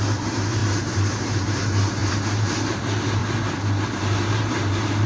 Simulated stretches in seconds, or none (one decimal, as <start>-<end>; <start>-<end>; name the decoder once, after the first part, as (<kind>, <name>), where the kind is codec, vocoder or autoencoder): 0.0-3.2 (vocoder, BigVGAN v2); 4.0-5.1